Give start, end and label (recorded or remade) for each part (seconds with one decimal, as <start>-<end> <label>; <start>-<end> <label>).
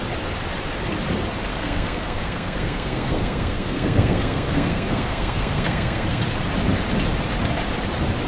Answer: 0.0-1.5 recorded; 1.5-6.2 remade; 6.2-8.3 recorded